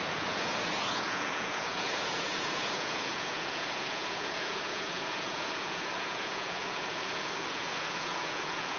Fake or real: fake